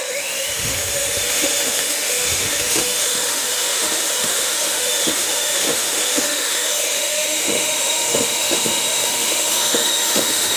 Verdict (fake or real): fake